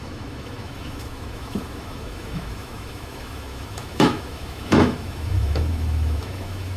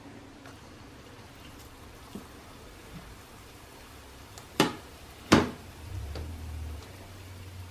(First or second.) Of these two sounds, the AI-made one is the first